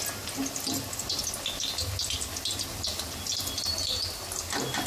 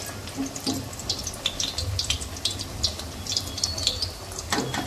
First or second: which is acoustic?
first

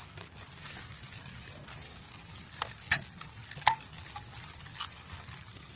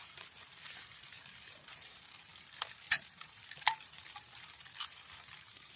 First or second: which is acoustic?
first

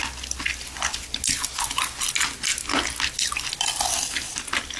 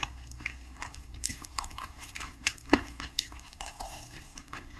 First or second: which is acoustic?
first